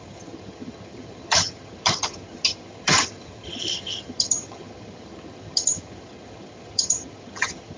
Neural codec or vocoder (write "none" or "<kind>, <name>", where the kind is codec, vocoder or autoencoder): vocoder, HiFi-GAN